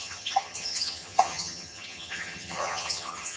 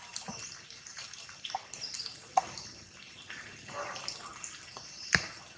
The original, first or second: second